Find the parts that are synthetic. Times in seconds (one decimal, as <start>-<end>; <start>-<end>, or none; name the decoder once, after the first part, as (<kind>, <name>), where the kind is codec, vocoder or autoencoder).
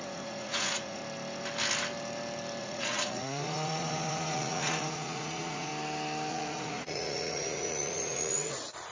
0.0-1.0 (vocoder, Vocos); 2.6-5.7; 6.3-8.9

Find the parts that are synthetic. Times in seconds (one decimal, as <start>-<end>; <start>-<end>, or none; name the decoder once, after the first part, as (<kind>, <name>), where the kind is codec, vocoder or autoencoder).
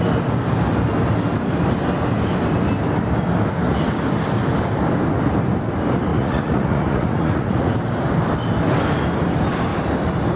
6.1-7.7 (vocoder, Vocos)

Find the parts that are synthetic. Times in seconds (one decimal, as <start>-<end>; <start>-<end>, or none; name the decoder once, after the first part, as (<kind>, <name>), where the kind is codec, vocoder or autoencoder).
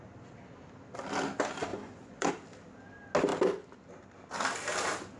1.7-2.3 (vocoder, Vocos)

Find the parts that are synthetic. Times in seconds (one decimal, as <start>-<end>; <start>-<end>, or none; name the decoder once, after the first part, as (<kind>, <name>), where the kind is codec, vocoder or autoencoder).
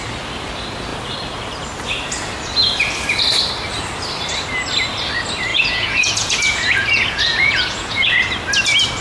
5.5-8.2 (vocoder, Vocos)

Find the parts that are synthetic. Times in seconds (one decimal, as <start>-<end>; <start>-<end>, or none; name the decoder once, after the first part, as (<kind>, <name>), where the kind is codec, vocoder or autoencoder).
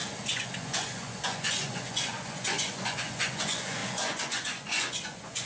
0.0-5.5 (vocoder, Vocos)